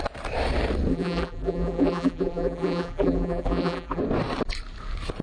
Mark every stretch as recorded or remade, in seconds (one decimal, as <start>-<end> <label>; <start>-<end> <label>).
0.0-0.9 recorded; 0.9-4.0 remade; 4.0-5.2 recorded